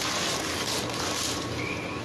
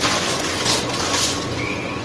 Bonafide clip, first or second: first